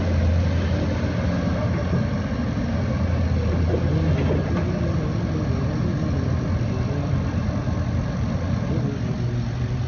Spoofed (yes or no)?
no